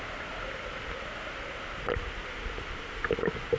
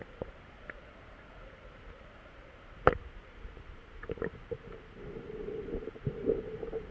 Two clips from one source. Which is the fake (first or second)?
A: second